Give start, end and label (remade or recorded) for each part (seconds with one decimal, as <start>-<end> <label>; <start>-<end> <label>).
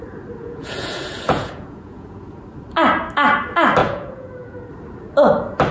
0.0-0.4 recorded; 0.4-2.4 remade; 2.4-3.8 recorded; 3.8-4.7 remade; 4.7-5.7 recorded